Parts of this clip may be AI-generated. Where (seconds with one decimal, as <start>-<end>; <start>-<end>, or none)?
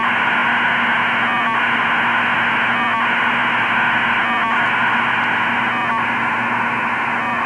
none